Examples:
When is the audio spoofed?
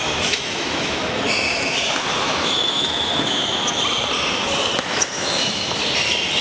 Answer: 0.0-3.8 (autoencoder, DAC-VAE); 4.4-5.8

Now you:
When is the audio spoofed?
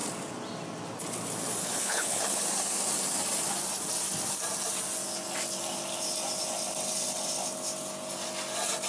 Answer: 1.6-2.4 (codec, HILCodec)